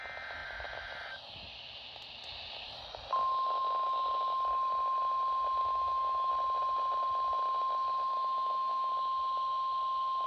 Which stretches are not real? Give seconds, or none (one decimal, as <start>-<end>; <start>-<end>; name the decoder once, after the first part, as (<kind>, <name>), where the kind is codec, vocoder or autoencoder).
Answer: 5.6-6.3 (autoencoder, DAC-VAE); 8.1-8.9